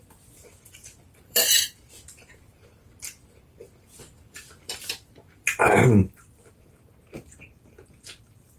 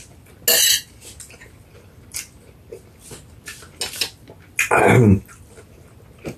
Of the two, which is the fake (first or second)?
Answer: first